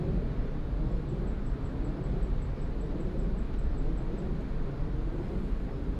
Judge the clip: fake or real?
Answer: real